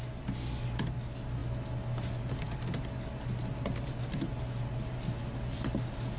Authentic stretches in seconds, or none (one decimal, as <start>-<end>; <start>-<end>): 0.0-6.2